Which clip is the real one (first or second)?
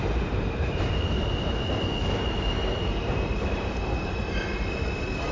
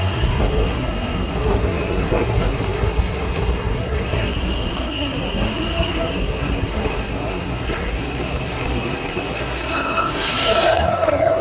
first